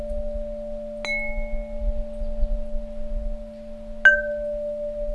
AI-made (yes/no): no